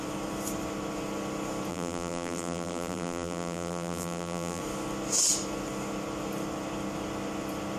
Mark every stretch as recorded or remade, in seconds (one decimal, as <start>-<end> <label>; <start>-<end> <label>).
0.0-1.7 recorded; 1.7-4.6 remade; 4.6-7.8 recorded